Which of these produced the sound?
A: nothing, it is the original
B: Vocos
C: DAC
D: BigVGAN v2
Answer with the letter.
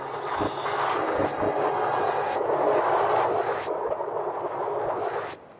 A